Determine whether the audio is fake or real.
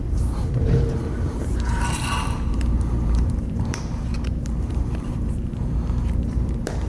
fake